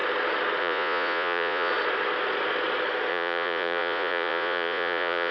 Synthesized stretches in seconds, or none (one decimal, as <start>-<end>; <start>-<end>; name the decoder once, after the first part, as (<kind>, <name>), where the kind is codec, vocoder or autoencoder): 0.6-1.7 (vocoder, Vocos); 3.1-5.3

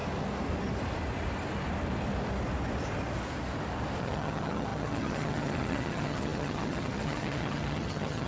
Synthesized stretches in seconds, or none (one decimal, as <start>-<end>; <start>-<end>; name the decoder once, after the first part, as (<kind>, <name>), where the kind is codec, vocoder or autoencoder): 4.0-8.3 (vocoder, HiFi-GAN)

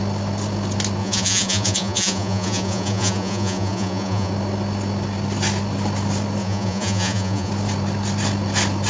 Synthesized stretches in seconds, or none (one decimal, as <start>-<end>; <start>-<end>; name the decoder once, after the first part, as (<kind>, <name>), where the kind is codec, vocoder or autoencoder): 1.0-4.3 (vocoder, Vocos); 6.4-7.5

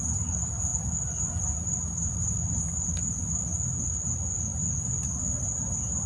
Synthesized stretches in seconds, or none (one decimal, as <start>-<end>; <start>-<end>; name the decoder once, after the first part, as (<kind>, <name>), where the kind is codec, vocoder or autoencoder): none

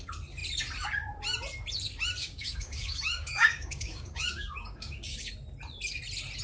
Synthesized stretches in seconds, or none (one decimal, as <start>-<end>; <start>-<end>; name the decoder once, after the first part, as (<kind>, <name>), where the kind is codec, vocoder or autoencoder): 2.2-5.3 (codec, DAC)